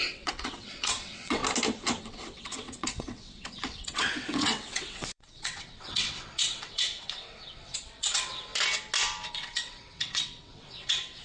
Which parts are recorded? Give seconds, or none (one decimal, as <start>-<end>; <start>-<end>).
1.4-2.0; 8.5-9.3